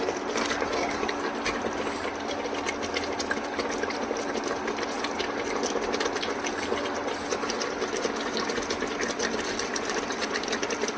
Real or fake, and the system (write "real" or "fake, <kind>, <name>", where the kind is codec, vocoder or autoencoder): real